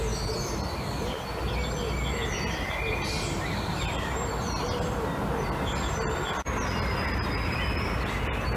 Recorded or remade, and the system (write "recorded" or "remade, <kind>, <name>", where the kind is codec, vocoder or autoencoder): recorded